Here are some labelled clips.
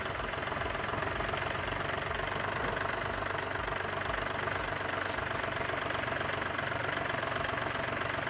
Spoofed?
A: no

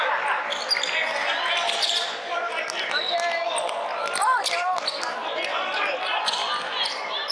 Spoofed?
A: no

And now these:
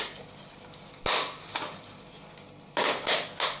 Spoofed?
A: no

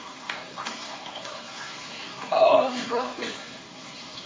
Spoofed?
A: yes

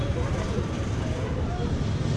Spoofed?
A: no